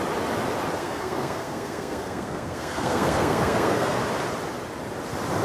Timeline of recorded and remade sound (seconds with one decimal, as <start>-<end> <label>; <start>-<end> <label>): 0.0-0.8 recorded; 0.8-4.0 remade; 4.0-5.4 recorded